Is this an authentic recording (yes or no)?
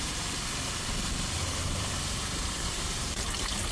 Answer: no